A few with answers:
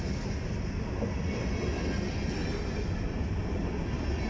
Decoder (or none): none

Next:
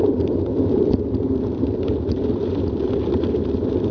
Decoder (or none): vocoder, BigVGAN v2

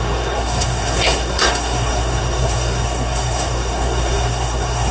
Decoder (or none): codec, SNAC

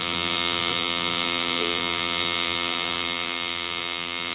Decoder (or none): vocoder, BigVGAN v2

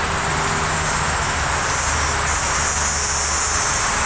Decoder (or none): none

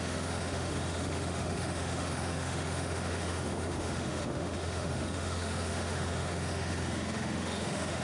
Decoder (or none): autoencoder, DAC-VAE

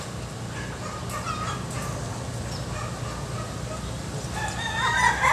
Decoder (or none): none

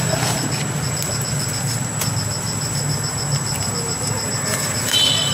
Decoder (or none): none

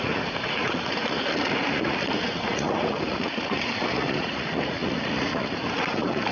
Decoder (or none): vocoder, Vocos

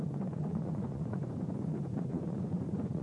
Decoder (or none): vocoder, Vocos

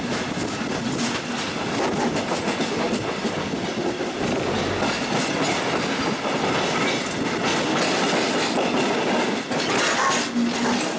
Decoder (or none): none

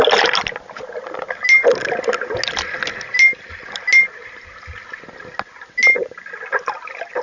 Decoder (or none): none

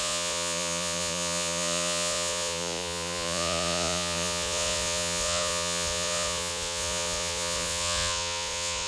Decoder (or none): vocoder, Vocos